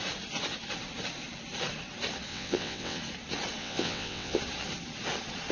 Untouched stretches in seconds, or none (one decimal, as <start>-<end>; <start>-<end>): 0.0-2.3; 3.0-3.6; 4.4-5.5